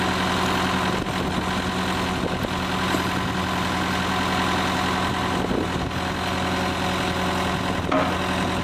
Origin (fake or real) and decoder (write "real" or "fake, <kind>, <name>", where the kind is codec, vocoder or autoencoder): real